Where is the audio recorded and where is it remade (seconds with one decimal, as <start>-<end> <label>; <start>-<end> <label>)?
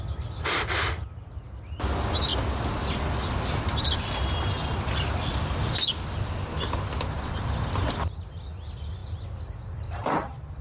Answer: 0.0-10.6 recorded